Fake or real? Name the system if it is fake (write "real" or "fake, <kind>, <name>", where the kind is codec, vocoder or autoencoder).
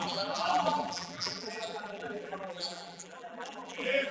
fake, vocoder, BigVGAN v2